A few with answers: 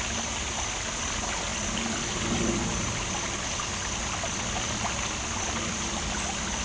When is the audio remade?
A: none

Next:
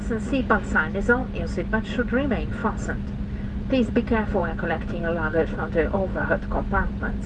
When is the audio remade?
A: 4.4-5.0 (vocoder, BigVGAN v2)

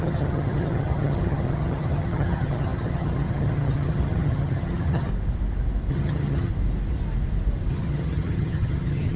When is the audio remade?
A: 0.0-5.1 (vocoder, HiFi-GAN); 5.9-6.5; 7.7-9.2

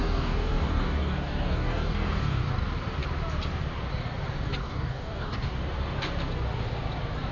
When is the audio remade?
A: 0.0-2.5 (codec, DAC); 4.6-5.5

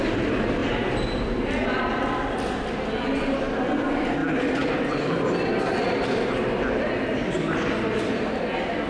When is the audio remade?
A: 4.2-5.6 (vocoder, BigVGAN v2)

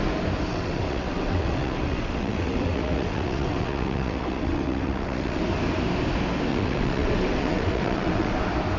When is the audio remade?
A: 0.5-5.4 (vocoder, WaveNeXt); 6.5-8.3

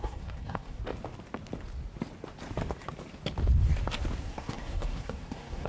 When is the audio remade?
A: 0.0-0.8 (codec, SNAC); 4.2-5.7